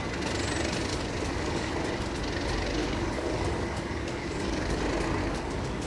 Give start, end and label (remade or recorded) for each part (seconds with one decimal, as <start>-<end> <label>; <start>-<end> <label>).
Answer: 0.0-0.9 recorded; 0.9-1.7 remade; 1.7-2.8 recorded; 2.8-4.8 remade; 4.8-5.2 recorded; 5.2-5.9 remade